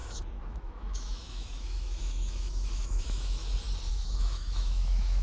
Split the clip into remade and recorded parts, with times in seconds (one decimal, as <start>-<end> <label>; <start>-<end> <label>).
0.0-3.4 remade; 3.4-3.9 recorded; 3.9-5.2 remade